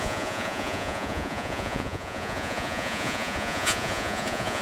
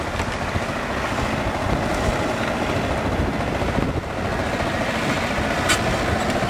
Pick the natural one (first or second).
second